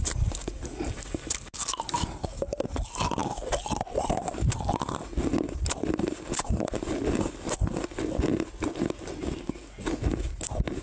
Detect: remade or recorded recorded